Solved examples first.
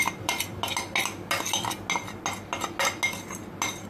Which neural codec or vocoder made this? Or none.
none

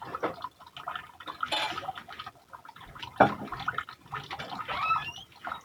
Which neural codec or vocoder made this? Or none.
none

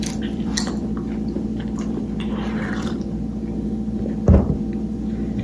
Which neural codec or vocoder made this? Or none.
vocoder, BigVGAN v2